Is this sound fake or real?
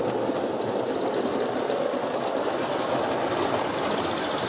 real